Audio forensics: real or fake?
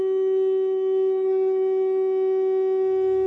real